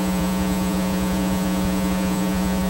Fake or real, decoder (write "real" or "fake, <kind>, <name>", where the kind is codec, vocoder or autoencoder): fake, vocoder, Vocos